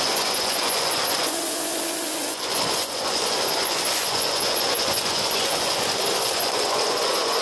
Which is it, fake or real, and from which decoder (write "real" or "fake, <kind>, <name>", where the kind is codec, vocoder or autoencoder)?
fake, vocoder, Vocos